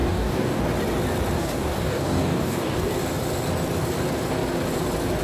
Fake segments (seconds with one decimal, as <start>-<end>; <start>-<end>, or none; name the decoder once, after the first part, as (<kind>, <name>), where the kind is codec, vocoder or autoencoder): 0.0-0.6 (codec, DAC); 1.4-2.9